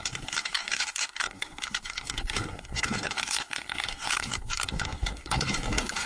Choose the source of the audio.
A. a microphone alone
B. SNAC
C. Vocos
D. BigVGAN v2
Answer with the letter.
B